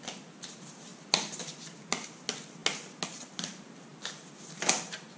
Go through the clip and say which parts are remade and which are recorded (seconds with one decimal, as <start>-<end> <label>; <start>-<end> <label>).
0.0-5.2 recorded